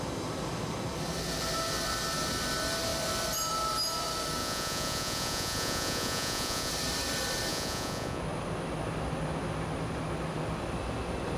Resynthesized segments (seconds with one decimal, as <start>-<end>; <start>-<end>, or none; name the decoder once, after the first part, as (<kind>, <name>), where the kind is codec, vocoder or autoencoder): 4.4-6.7 (vocoder, Vocos); 7.5-8.2